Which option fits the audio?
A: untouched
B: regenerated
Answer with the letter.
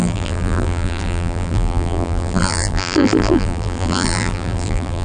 B